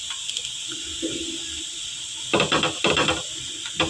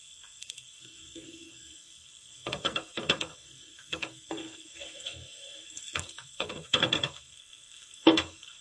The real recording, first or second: first